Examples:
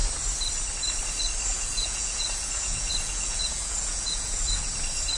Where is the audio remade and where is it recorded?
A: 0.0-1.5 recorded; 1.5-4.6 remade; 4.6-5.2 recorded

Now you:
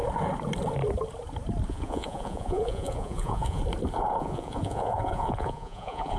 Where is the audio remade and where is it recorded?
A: 0.0-1.7 recorded; 1.7-3.6 remade; 3.6-4.2 recorded; 4.2-6.2 remade

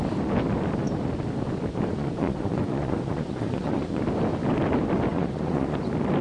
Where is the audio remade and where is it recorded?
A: 0.0-1.9 recorded; 1.9-4.0 remade; 4.0-5.1 recorded; 5.1-5.8 remade; 5.8-6.2 recorded

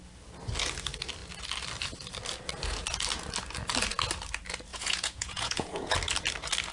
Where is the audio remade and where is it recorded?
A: 0.0-4.7 recorded; 4.7-5.9 remade; 5.9-6.7 recorded

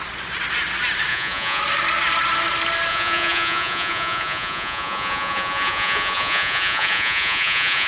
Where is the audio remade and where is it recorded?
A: 0.0-1.1 recorded; 1.1-1.6 remade; 1.6-2.9 recorded; 2.9-7.9 remade

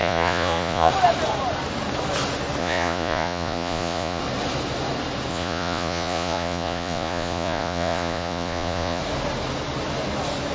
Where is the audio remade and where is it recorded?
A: 0.0-0.9 remade; 0.9-2.6 recorded; 2.6-4.2 remade; 4.2-5.3 recorded; 5.3-9.0 remade; 9.0-10.5 recorded

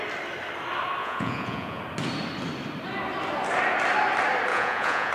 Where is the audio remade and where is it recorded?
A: 0.0-1.0 recorded; 1.0-1.8 remade; 1.8-4.5 recorded; 4.5-5.1 remade

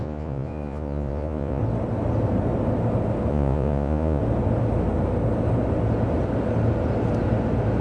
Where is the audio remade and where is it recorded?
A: 0.0-1.6 remade; 1.6-3.3 recorded; 3.3-4.2 remade; 4.2-7.8 recorded